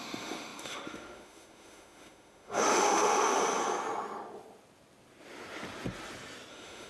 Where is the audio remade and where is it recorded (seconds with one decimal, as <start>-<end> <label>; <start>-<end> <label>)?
0.0-3.4 remade; 3.4-6.5 recorded; 6.5-6.9 remade